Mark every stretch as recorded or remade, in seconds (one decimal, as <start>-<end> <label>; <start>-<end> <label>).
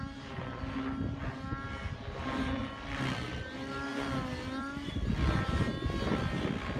0.0-6.8 recorded